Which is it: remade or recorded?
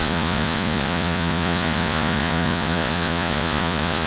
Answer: remade